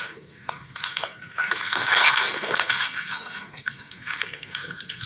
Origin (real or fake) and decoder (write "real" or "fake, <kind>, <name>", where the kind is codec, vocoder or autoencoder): fake, codec, SNAC